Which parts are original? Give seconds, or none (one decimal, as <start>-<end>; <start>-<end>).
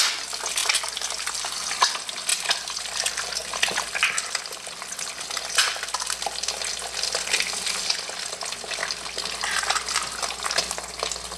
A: 0.0-0.6; 1.3-2.3; 2.8-3.4; 5.9-11.4